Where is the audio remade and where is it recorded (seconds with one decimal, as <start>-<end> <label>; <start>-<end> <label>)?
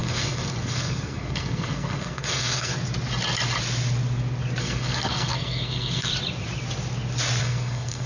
0.0-2.7 remade; 2.7-4.6 recorded; 4.6-6.1 remade; 6.1-7.4 recorded; 7.4-8.1 remade